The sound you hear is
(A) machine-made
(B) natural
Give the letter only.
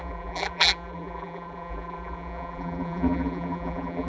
A